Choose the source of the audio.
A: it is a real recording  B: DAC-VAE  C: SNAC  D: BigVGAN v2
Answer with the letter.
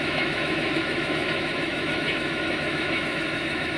B